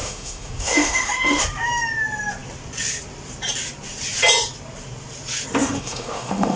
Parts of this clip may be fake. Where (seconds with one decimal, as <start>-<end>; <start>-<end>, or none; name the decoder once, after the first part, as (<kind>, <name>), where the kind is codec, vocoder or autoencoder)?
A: 0.0-1.4 (autoencoder, DAC-VAE); 5.6-6.6